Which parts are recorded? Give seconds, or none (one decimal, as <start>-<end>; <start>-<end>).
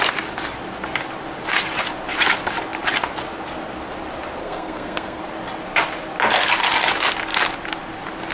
0.0-4.4; 5.2-8.3